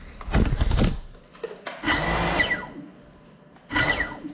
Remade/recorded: recorded